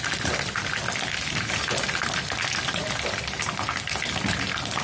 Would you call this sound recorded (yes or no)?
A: yes